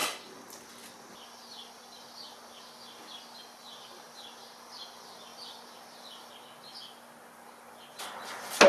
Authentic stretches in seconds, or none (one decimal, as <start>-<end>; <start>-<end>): 0.0-5.3; 6.3-8.7